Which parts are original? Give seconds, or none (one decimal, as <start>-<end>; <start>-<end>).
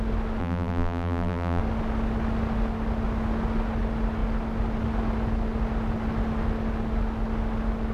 0.0-0.4; 1.6-7.9